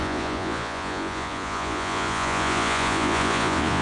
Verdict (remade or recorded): remade